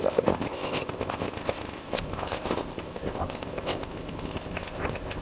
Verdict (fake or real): fake